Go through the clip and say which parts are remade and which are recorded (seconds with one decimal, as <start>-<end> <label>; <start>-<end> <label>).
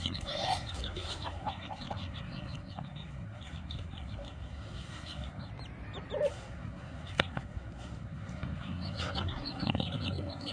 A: 0.0-5.5 remade; 5.5-6.3 recorded; 6.3-10.5 remade